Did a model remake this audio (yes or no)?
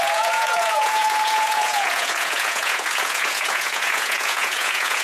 yes